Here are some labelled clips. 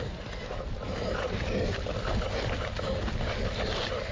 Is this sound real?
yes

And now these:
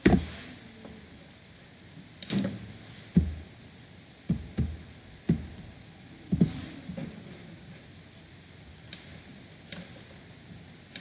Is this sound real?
yes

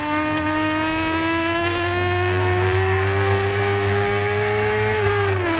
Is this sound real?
no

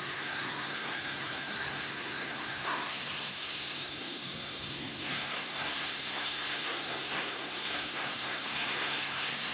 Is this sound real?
no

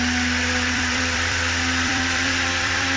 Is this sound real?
no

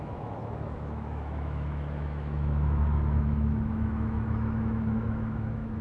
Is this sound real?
no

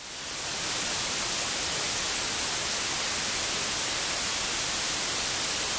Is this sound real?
yes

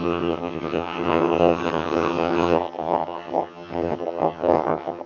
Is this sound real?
no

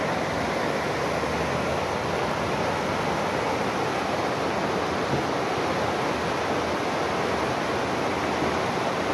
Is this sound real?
yes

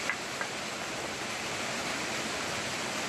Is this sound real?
yes